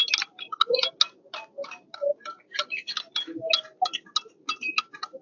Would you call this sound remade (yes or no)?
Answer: no